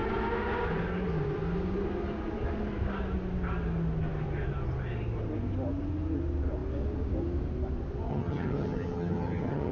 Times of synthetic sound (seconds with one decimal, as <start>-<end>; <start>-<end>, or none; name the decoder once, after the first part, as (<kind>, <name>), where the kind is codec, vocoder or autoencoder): 8.1-9.7 (vocoder, HiFi-GAN)